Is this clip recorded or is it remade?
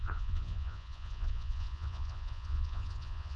remade